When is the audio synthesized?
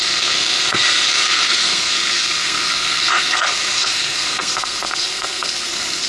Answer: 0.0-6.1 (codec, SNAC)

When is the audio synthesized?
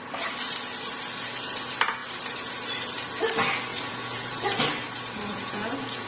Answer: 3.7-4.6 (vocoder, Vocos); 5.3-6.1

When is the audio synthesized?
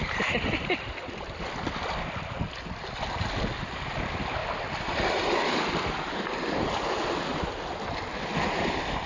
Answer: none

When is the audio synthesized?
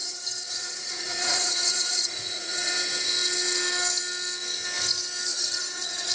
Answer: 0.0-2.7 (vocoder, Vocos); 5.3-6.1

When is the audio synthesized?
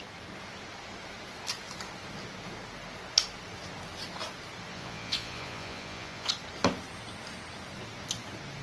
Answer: 4.7-6.3 (vocoder, Vocos)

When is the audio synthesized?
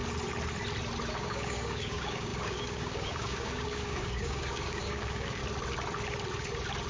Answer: 1.1-5.4 (codec, DAC)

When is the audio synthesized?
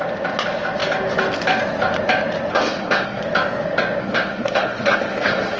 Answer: 2.5-3.2 (codec, SNAC); 4.0-5.6